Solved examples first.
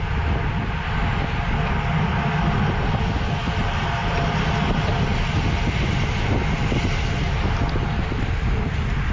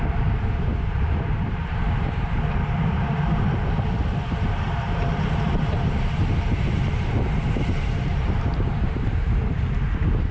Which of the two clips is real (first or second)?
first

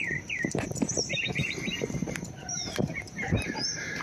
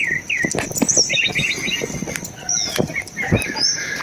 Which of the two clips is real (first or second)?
second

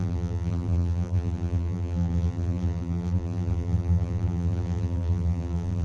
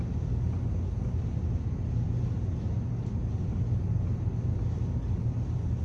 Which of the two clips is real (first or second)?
second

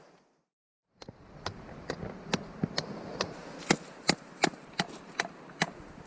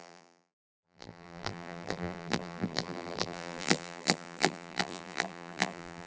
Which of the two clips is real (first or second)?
first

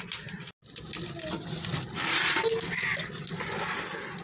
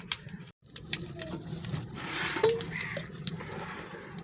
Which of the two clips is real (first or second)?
first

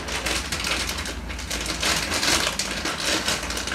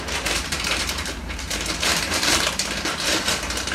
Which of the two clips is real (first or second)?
first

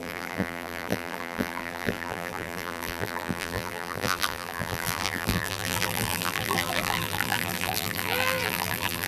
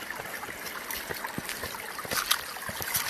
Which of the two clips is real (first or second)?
second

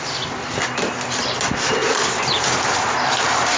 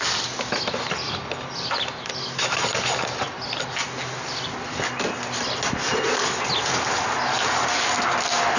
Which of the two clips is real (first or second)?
second